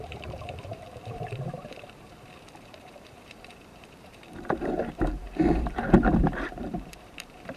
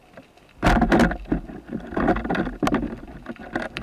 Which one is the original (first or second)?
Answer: second